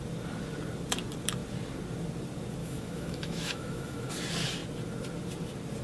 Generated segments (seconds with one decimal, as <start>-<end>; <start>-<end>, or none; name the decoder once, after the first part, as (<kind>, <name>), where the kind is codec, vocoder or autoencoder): 2.6-4.1 (autoencoder, DAC-VAE)